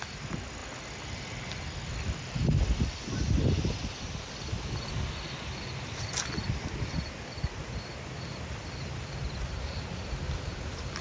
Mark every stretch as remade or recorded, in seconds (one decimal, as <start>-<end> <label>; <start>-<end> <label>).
0.0-11.0 recorded